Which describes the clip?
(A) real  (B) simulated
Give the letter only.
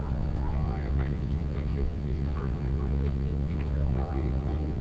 B